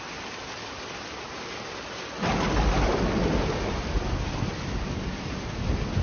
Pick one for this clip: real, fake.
real